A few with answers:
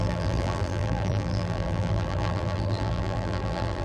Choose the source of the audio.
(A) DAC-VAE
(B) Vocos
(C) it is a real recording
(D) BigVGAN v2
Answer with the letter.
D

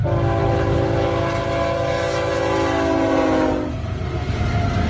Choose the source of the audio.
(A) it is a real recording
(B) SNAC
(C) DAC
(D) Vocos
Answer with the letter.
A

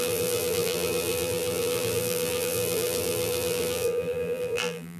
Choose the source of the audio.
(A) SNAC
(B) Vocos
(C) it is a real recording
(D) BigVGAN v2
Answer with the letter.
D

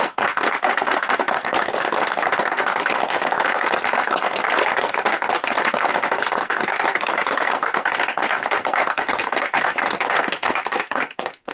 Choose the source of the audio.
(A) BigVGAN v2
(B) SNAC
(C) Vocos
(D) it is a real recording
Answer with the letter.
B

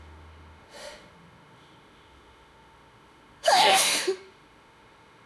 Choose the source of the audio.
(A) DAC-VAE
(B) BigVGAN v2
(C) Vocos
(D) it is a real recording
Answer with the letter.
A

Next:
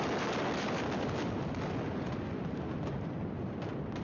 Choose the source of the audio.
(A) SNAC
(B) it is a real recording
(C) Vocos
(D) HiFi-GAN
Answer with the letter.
B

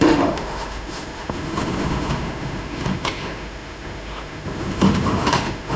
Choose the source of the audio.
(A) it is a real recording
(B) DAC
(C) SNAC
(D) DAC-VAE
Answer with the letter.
D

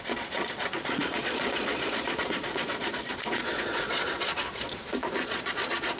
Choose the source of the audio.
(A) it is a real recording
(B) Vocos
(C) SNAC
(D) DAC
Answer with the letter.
B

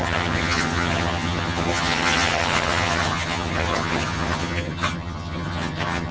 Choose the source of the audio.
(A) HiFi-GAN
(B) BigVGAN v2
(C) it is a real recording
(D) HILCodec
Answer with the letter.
A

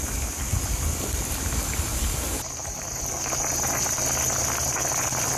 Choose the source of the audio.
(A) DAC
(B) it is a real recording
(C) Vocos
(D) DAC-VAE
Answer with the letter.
B